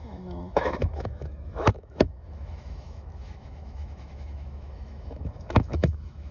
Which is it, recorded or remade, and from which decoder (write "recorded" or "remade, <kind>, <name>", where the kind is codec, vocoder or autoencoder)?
remade, autoencoder, DAC-VAE